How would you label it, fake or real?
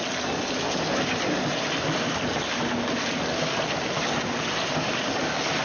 real